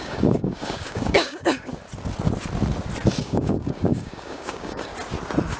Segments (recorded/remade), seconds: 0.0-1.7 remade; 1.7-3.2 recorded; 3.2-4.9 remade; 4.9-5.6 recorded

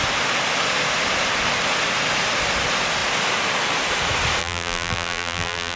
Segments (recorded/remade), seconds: 0.0-4.4 recorded; 4.4-5.8 remade

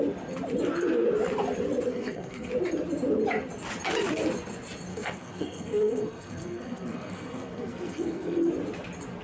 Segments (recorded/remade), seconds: 0.0-1.9 recorded; 1.9-2.5 remade; 2.5-4.9 recorded; 4.9-8.5 remade; 8.5-9.2 recorded